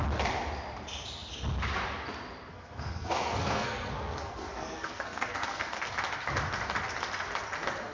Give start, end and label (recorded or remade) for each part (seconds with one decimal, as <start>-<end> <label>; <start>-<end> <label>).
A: 0.0-2.5 recorded; 2.5-5.7 remade; 5.7-7.9 recorded